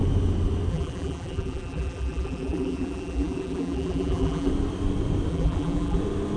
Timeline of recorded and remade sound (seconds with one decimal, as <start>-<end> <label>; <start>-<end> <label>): 0.0-0.7 recorded; 0.7-4.5 remade; 4.5-5.3 recorded; 5.3-6.0 remade; 6.0-6.4 recorded